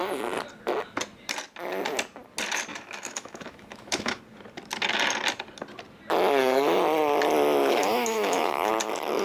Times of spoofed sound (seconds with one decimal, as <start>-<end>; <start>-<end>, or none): 2.7-4.2; 7.6-8.7